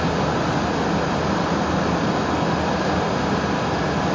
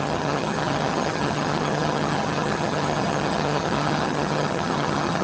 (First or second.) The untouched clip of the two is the first